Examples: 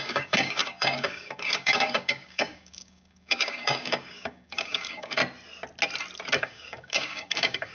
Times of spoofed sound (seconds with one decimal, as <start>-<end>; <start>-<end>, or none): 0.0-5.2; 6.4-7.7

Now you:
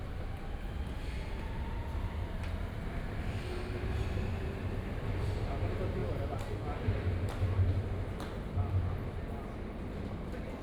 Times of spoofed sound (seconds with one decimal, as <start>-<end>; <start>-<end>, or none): none

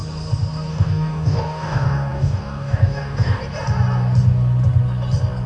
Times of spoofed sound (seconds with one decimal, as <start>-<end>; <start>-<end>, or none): 0.7-3.4